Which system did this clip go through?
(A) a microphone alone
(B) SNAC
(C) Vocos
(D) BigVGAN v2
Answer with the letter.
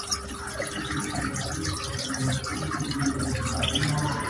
A